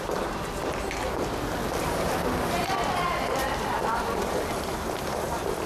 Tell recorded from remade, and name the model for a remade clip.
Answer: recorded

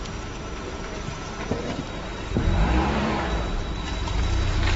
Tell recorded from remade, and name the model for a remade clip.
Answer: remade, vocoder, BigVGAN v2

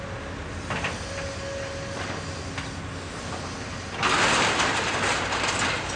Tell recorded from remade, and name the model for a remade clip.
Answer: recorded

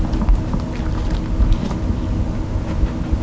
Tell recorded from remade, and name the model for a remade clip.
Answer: recorded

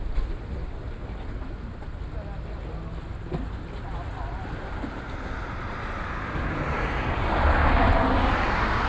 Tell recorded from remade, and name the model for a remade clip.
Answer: recorded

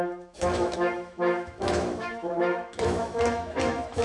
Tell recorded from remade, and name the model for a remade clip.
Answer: remade, autoencoder, DAC-VAE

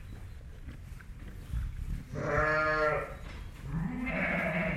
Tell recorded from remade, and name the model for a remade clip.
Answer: recorded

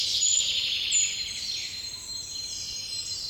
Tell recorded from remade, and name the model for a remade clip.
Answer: remade, vocoder, BigVGAN v2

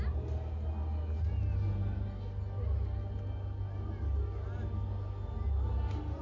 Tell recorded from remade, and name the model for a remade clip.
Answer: recorded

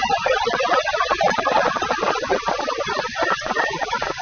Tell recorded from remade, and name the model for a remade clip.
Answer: remade, vocoder, Vocos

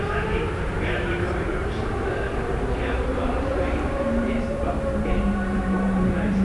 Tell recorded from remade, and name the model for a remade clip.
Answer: remade, vocoder, BigVGAN v2